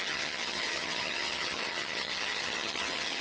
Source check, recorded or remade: remade